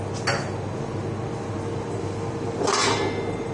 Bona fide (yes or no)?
yes